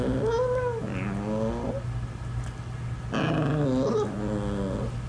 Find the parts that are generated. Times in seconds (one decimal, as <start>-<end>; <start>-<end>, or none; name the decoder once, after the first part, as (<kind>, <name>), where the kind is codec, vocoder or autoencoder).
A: none